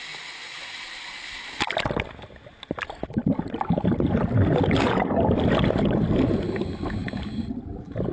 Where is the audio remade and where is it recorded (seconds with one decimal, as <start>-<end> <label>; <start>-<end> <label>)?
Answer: 0.0-8.1 recorded